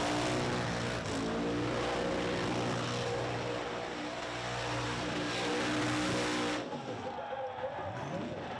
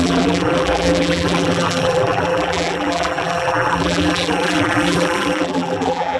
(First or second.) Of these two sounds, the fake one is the second